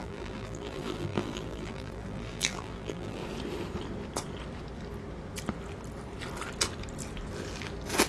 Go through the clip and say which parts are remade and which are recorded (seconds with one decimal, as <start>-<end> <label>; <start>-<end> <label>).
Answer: 0.0-3.2 remade; 3.2-8.1 recorded